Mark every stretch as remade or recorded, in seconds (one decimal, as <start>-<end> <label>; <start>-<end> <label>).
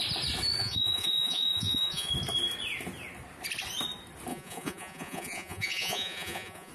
0.0-0.6 recorded; 0.6-2.1 remade; 2.1-4.3 recorded; 4.3-6.7 remade